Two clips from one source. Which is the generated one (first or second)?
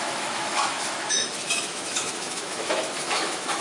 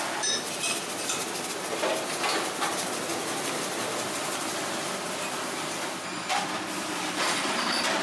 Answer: first